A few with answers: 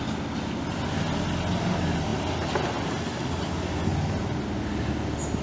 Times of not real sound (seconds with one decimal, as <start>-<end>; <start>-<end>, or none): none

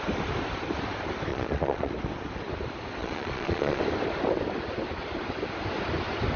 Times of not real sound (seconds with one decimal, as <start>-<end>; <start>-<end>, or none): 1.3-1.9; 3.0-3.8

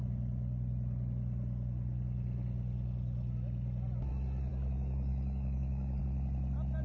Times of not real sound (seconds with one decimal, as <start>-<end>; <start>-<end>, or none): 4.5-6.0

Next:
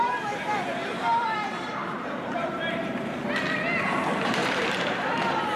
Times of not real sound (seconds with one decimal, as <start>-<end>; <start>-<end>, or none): 1.1-3.3; 4.4-5.6

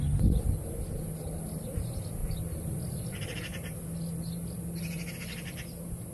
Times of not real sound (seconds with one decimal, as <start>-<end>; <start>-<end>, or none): none